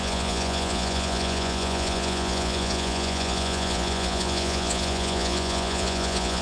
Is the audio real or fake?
fake